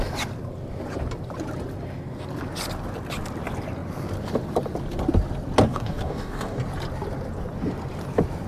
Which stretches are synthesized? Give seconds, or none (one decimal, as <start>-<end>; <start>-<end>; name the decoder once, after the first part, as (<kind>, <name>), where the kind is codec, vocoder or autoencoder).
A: 5.7-6.6 (codec, DAC)